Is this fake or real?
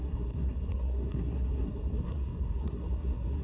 fake